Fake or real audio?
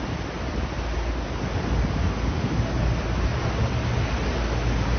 real